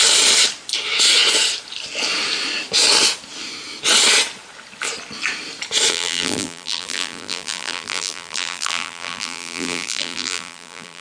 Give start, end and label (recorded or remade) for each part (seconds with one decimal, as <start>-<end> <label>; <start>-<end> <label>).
0.0-5.9 recorded; 5.9-11.0 remade